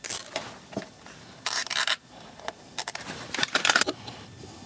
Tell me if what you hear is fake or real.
real